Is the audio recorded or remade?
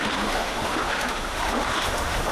remade